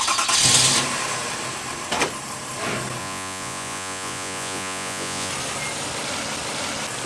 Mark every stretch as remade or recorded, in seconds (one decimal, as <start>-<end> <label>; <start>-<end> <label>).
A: 0.0-3.0 recorded; 3.0-5.3 remade; 5.3-7.1 recorded